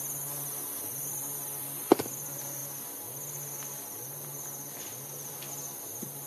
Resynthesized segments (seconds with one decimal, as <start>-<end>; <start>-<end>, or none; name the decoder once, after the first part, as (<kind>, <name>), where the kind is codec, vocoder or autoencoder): none